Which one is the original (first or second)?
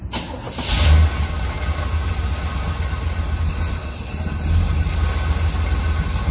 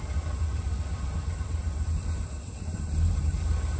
first